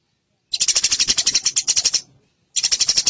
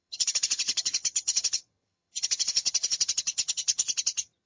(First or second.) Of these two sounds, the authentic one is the first